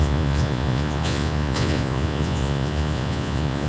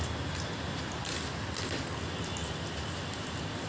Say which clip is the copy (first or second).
first